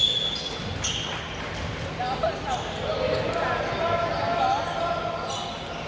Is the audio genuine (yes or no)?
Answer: yes